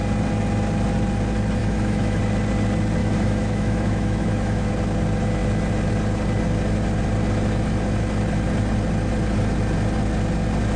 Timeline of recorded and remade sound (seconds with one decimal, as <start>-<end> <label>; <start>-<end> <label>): 0.0-1.6 recorded; 1.6-2.2 remade; 2.2-3.0 recorded; 3.0-4.7 remade; 4.7-10.8 recorded